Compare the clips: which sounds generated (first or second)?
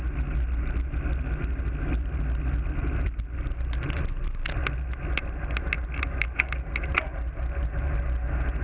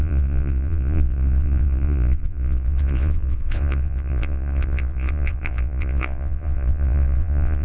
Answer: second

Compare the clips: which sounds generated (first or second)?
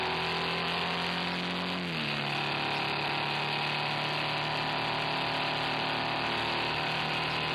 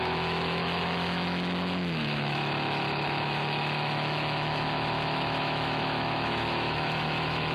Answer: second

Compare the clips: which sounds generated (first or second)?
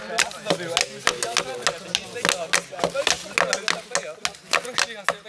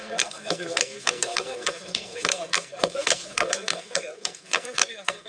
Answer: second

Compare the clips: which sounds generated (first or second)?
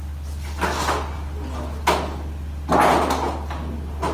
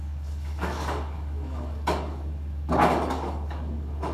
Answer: second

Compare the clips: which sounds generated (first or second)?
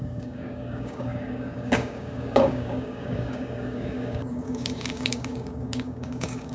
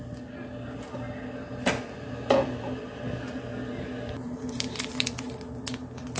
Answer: first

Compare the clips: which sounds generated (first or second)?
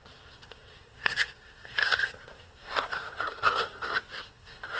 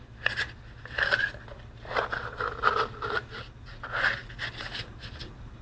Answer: first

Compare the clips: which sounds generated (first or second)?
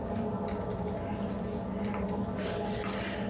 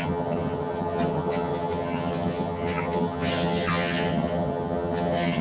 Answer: second